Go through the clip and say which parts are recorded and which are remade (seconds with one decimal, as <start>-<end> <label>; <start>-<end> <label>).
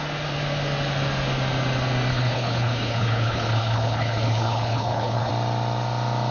0.0-2.1 recorded; 2.1-5.3 remade; 5.3-6.3 recorded